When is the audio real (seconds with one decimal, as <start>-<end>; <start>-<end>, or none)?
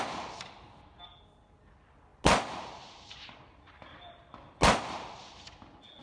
0.0-6.0